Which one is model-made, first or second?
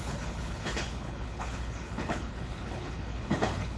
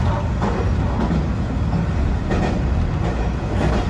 first